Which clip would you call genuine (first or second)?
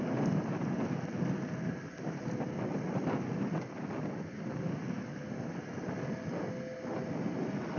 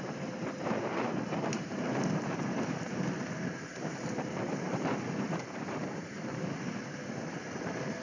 first